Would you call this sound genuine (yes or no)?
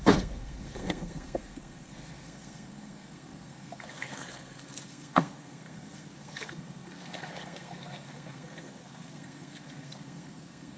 no